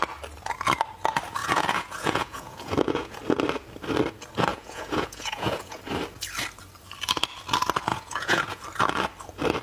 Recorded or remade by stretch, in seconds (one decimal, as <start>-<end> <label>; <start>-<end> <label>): 0.0-1.4 recorded; 1.4-3.2 remade; 3.2-4.5 recorded; 4.5-5.8 remade; 5.8-7.9 recorded; 7.9-8.6 remade; 8.6-9.6 recorded